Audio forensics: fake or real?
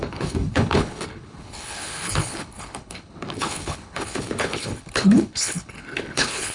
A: fake